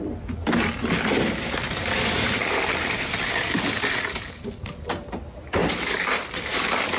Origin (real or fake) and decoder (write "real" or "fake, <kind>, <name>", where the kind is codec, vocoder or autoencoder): real